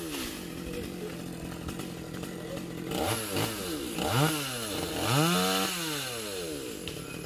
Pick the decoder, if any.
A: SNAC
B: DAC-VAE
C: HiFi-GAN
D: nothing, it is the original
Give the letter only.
D